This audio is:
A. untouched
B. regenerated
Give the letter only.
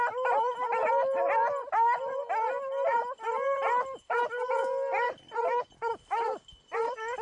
A